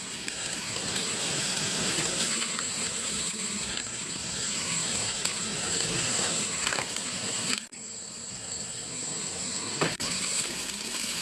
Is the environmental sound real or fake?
fake